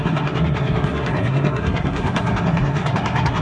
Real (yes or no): no